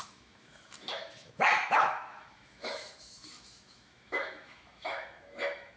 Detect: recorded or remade remade